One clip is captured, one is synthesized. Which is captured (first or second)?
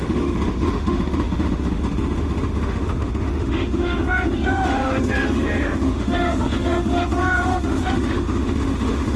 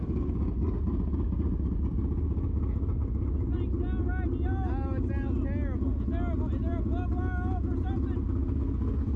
second